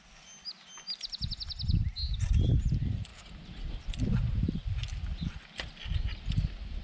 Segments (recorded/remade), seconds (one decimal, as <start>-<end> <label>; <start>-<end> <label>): 0.0-6.8 recorded

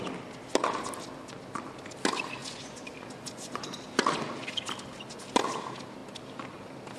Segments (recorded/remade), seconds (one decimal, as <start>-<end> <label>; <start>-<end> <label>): 0.0-2.4 recorded; 2.4-3.8 remade; 3.8-7.0 recorded

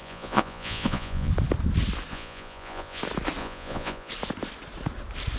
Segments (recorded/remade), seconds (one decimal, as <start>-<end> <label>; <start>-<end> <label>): 0.0-1.3 remade; 1.3-2.1 recorded; 2.1-3.0 remade; 3.0-3.4 recorded; 3.4-4.1 remade; 4.1-5.4 recorded